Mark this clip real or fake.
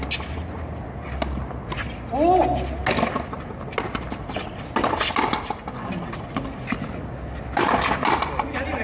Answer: real